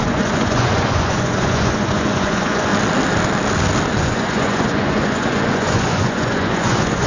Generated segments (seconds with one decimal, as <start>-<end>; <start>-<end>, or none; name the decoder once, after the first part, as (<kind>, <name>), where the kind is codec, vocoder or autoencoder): 0.0-2.7 (vocoder, Vocos); 4.0-7.1